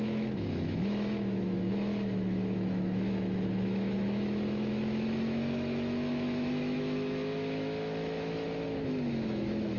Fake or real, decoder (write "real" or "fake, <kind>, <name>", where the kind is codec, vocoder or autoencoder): fake, autoencoder, DAC-VAE